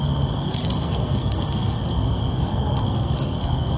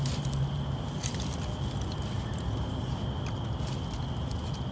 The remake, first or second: first